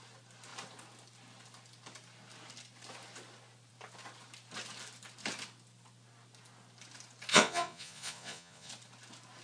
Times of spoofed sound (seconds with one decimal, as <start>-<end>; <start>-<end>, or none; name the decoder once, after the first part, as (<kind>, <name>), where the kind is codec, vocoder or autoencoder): 7.3-8.7 (vocoder, Vocos)